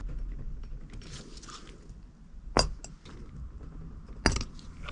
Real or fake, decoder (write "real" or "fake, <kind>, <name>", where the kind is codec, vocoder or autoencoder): real